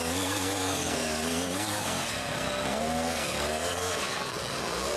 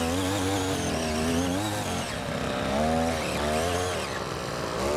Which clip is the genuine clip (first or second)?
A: second